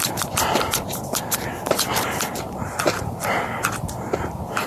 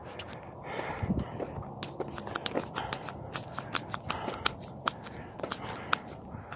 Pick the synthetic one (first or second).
first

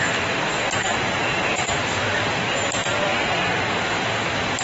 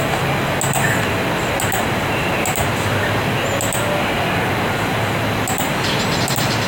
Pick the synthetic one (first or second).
first